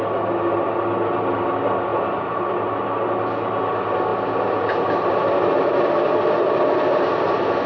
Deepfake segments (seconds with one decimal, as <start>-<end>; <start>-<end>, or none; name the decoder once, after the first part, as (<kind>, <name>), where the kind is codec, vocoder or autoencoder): 1.9-2.7 (vocoder, BigVGAN v2)